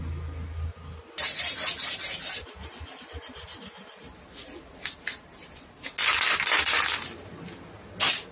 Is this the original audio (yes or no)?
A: yes